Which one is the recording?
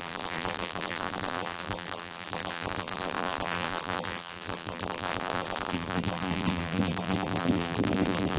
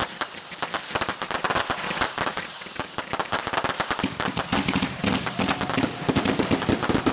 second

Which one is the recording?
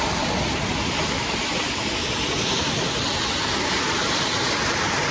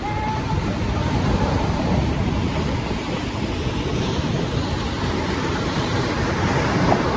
first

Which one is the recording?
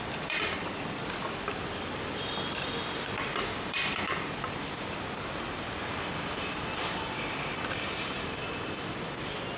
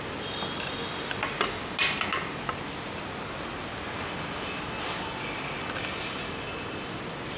second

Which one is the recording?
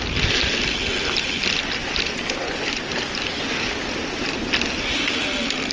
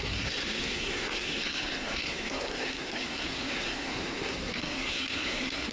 first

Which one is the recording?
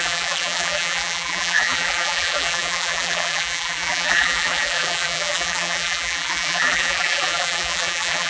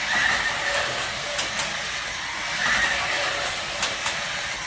second